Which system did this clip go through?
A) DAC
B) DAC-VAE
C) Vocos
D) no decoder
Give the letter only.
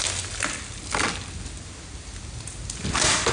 D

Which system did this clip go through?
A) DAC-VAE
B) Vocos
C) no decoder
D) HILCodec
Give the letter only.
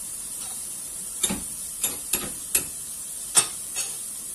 C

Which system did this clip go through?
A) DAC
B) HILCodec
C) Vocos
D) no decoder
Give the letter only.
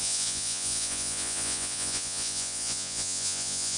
C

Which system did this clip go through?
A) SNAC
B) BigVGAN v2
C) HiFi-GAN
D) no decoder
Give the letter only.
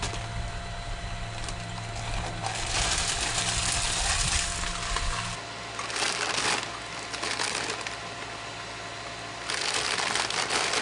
D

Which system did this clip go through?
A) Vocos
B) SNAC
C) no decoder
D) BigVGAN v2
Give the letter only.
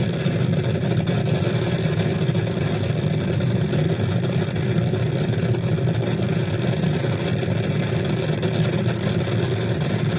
C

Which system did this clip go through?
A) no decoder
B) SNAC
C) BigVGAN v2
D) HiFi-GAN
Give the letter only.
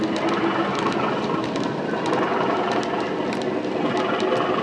A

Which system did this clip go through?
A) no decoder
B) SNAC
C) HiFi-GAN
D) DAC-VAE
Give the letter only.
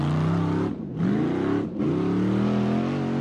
A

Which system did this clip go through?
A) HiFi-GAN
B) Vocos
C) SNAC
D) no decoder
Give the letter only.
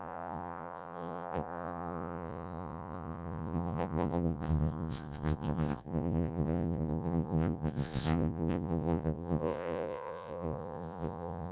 B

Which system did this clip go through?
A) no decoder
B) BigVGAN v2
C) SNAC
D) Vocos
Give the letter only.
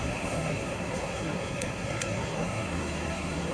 C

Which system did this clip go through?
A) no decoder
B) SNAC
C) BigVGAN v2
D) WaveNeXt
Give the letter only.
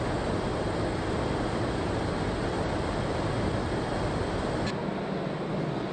A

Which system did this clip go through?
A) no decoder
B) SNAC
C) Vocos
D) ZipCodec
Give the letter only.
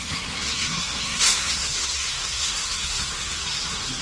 B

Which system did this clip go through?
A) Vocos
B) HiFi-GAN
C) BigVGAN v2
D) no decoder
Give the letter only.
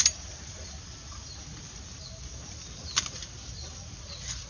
D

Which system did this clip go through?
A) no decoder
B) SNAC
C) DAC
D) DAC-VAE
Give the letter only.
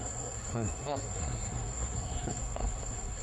B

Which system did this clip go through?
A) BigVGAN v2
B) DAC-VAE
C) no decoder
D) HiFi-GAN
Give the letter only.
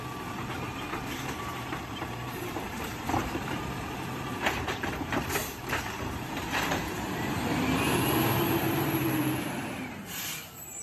A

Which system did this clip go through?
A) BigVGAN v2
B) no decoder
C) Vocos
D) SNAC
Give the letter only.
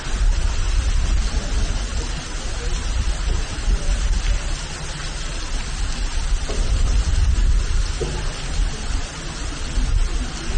B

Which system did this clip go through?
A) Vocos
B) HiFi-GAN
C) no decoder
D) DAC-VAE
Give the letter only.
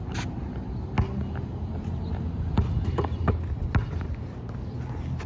C